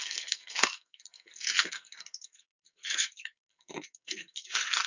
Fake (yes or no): yes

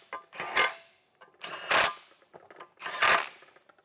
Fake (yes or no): no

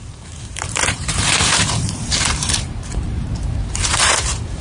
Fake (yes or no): yes